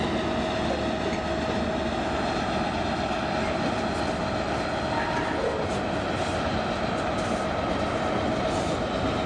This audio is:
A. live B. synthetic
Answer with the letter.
A